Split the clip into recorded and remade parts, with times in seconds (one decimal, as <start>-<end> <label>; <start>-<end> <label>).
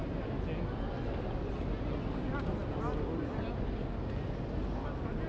0.0-5.3 recorded